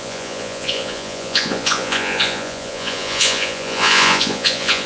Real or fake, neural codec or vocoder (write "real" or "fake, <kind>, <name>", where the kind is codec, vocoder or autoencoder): fake, vocoder, Vocos